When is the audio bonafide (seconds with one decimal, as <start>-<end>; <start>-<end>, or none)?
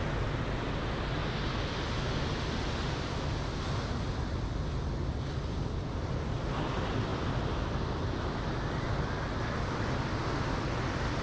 0.0-11.2